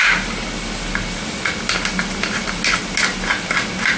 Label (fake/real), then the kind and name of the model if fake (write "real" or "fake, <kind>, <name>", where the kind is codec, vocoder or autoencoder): real